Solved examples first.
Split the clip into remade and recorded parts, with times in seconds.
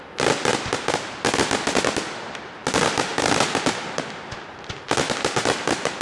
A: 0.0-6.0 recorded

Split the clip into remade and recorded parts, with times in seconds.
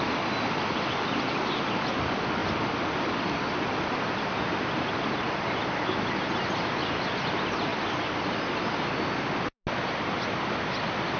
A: 0.0-2.4 recorded; 2.4-5.7 remade; 5.7-7.7 recorded; 7.7-8.6 remade; 8.6-11.2 recorded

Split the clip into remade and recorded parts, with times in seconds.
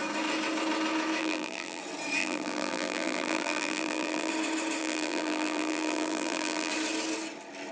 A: 0.0-1.2 recorded; 1.2-1.8 remade; 1.8-2.2 recorded; 2.2-4.3 remade; 4.3-4.8 recorded; 4.8-6.7 remade; 6.7-7.7 recorded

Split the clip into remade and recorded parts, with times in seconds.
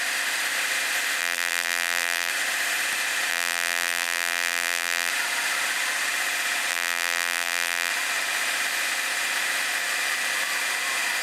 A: 0.0-1.2 recorded; 1.2-2.3 remade; 2.3-3.3 recorded; 3.3-5.1 remade; 5.1-6.7 recorded; 6.7-7.9 remade; 7.9-11.2 recorded